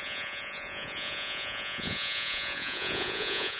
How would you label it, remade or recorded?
remade